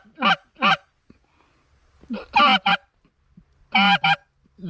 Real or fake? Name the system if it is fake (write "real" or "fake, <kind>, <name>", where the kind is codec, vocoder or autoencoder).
real